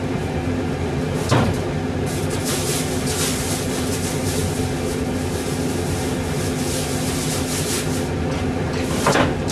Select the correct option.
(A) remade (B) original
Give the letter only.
B